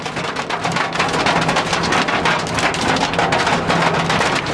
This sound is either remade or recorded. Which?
recorded